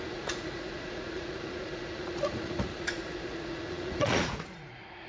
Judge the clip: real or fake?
fake